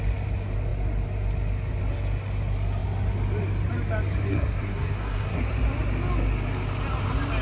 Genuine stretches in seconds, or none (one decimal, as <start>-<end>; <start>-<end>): 0.0-4.3; 5.4-7.4